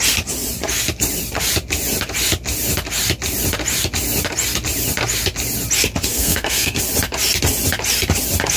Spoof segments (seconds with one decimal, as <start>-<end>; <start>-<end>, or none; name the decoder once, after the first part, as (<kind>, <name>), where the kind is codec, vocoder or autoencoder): 6.1-6.8 (codec, SNAC)